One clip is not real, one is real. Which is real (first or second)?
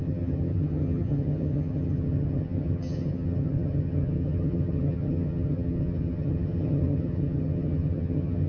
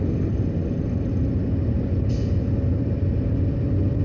second